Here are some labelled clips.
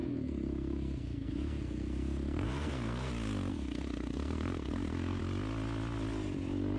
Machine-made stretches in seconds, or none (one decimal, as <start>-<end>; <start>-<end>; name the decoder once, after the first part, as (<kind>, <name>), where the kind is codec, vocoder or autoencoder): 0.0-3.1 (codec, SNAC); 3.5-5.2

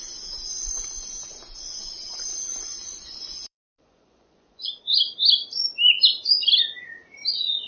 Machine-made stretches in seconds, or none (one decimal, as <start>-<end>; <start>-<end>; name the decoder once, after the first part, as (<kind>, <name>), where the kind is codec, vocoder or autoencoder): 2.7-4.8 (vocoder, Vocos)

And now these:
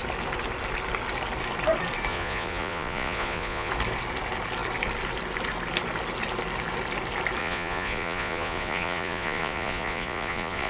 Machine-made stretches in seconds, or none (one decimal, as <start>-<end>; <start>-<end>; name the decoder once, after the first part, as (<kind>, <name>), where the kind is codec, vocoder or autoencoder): 2.1-3.7 (vocoder, Vocos); 7.4-10.7

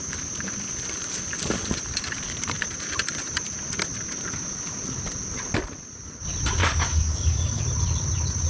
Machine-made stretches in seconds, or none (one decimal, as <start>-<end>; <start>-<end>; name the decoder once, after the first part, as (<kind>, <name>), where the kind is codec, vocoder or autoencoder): 6.6-7.6 (codec, DAC)